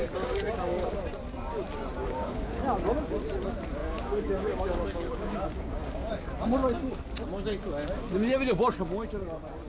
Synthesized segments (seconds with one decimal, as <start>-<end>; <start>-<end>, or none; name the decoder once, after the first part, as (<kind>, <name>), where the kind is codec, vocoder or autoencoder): 0.0-0.9 (codec, DAC); 2.0-2.6; 3.8-6.1